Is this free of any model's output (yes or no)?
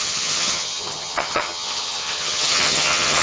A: no